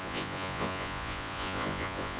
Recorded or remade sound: remade